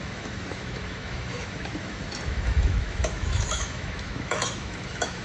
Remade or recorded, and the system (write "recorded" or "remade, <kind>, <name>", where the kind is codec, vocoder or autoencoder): remade, autoencoder, DAC-VAE